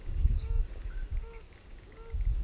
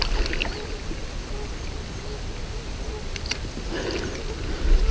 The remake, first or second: first